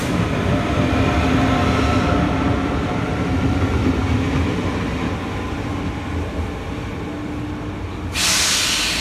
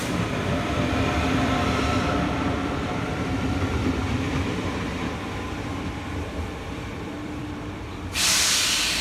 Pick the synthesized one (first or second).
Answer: second